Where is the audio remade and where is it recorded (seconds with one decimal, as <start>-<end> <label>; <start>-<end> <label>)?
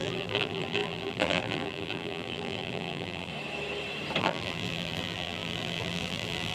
0.0-3.3 remade; 3.3-4.2 recorded; 4.2-6.5 remade